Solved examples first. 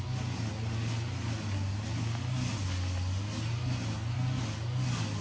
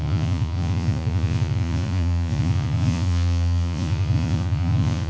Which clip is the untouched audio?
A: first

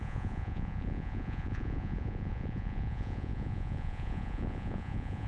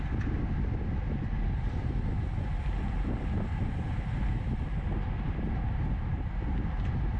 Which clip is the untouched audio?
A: second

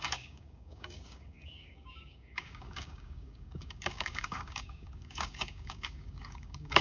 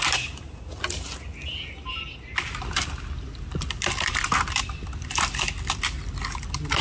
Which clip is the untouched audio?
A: second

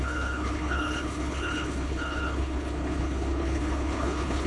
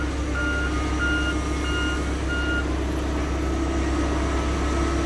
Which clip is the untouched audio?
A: second